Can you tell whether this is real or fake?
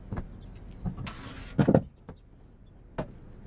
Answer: real